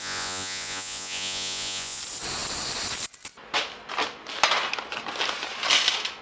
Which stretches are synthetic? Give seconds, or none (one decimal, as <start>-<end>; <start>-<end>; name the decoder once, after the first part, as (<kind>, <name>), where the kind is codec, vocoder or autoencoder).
0.0-2.0 (vocoder, Vocos)